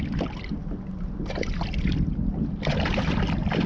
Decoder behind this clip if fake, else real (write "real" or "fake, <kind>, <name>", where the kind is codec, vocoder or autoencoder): real